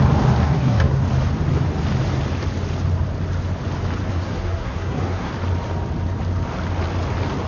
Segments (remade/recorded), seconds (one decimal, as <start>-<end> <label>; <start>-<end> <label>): 0.0-0.4 recorded; 0.4-1.0 remade; 1.0-4.1 recorded; 4.1-5.3 remade; 5.3-7.5 recorded